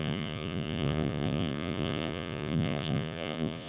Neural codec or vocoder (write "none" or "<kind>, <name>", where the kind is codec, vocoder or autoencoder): vocoder, Vocos